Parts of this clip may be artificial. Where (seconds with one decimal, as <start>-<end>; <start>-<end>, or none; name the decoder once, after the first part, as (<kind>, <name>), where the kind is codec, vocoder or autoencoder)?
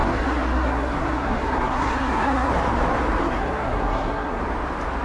0.0-2.5 (codec, SNAC); 3.2-4.4